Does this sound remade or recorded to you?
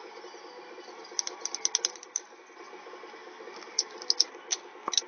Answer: recorded